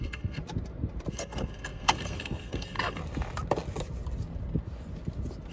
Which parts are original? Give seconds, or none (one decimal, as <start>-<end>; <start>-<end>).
0.4-1.1; 3.0-5.5